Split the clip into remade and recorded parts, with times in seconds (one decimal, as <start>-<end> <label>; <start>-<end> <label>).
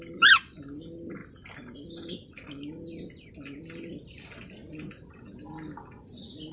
0.0-6.5 recorded